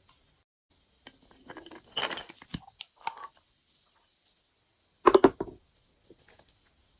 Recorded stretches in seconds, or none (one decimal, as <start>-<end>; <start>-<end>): 0.0-7.0